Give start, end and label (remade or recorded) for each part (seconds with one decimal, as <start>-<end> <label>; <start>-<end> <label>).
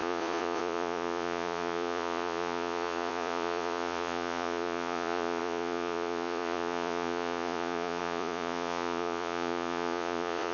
0.0-10.5 remade